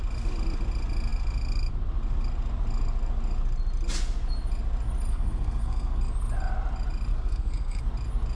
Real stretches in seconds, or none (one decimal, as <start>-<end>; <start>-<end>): 0.0-5.1; 6.0-7.1; 7.8-8.3